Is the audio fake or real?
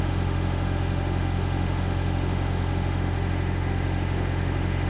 fake